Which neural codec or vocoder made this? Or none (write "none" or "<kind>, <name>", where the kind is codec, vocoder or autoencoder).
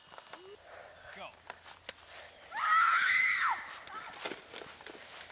none